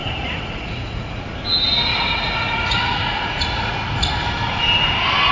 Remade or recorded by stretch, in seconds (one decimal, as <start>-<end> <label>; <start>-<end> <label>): 0.0-1.2 remade; 1.2-1.9 recorded; 1.9-3.7 remade; 3.7-5.3 recorded